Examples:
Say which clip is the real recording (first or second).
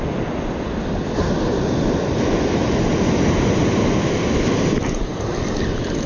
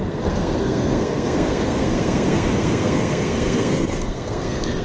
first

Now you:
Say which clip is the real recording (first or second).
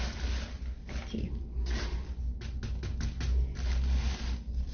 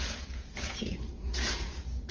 first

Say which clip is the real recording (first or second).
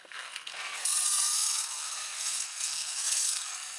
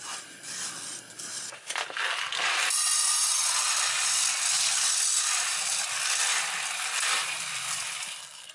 second